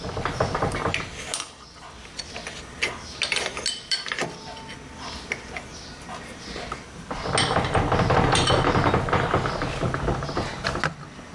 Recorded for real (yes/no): yes